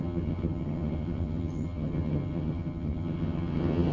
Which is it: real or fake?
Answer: fake